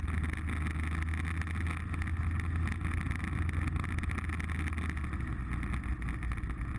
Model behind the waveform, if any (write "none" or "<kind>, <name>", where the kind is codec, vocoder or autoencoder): none